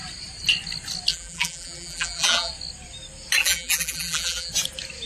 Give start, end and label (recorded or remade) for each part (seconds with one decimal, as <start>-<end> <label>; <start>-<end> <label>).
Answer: 0.0-1.1 recorded; 1.1-2.5 remade; 2.5-3.4 recorded; 3.4-4.5 remade; 4.5-5.1 recorded